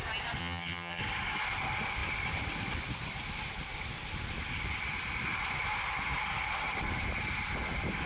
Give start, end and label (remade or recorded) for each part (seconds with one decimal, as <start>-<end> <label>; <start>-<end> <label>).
0.0-0.4 recorded; 0.4-1.0 remade; 1.0-8.1 recorded